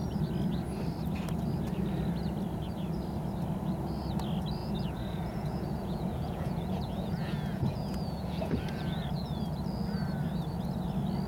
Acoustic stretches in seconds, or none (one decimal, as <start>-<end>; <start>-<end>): 0.0-4.6; 9.5-11.3